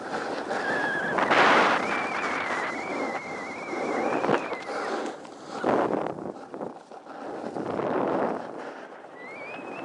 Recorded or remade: recorded